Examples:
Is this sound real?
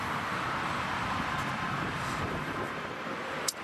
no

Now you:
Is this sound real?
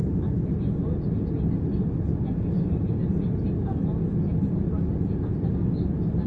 yes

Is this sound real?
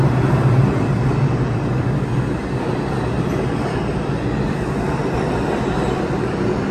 yes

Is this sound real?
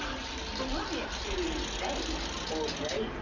yes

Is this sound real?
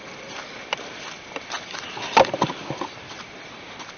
no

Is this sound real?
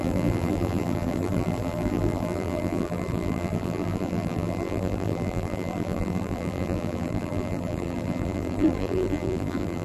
no